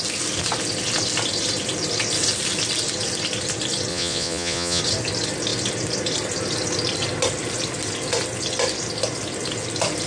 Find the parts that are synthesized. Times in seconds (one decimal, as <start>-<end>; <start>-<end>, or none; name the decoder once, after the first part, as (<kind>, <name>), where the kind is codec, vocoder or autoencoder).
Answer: 3.9-4.8 (vocoder, Vocos)